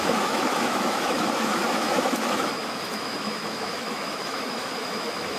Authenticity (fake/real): fake